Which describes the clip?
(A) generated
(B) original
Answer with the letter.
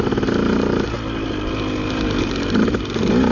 B